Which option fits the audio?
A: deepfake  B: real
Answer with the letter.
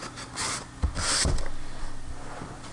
B